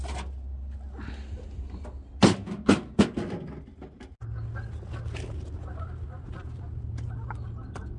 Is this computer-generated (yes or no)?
no